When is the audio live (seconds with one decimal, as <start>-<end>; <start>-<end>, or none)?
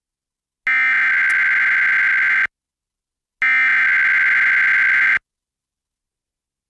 0.0-6.7